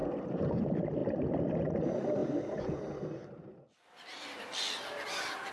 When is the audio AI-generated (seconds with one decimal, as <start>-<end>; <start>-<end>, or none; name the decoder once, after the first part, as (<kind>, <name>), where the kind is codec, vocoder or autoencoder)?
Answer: 2.2-5.5 (vocoder, BigVGAN v2)